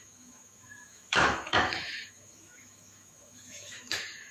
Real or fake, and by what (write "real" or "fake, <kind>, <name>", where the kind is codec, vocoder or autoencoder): fake, autoencoder, DAC-VAE